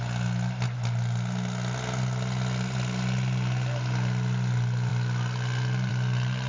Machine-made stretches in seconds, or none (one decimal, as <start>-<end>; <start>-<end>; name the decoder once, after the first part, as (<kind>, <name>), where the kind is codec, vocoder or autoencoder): none